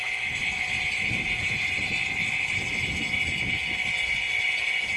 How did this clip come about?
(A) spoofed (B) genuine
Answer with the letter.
B